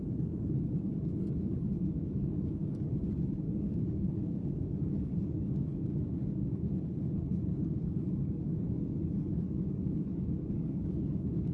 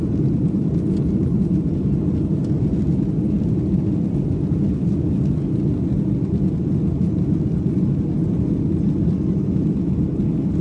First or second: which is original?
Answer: second